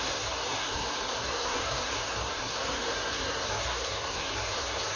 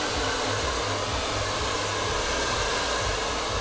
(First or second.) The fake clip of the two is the first